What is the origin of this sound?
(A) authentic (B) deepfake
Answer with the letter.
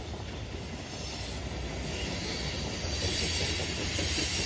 A